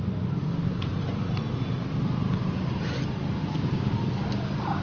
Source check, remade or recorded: recorded